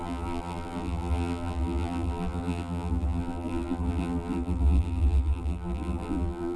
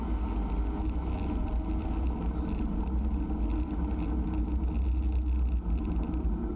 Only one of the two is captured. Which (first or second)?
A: second